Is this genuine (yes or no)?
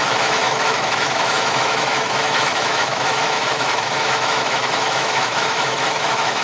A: no